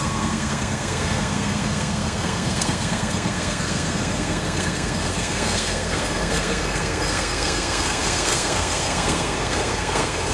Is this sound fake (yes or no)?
yes